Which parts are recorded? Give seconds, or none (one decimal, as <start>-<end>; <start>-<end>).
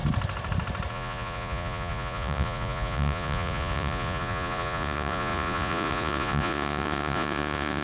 0.0-0.9